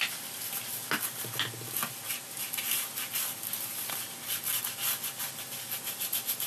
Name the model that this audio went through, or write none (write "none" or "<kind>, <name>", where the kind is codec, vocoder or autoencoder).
none